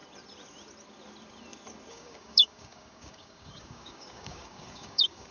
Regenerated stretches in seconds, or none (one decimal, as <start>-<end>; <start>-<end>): 1.9-5.3